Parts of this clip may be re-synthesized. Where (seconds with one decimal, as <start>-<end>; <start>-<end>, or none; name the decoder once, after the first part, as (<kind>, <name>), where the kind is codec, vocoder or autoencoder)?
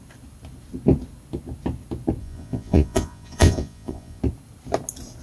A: 2.2-4.2 (vocoder, Vocos)